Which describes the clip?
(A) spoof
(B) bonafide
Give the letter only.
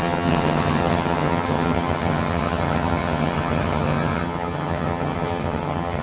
A